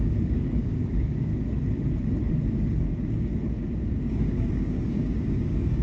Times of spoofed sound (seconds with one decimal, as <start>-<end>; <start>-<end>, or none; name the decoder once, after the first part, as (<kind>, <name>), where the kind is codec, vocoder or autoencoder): 0.0-1.3 (codec, DAC); 2.3-3.3; 3.9-5.8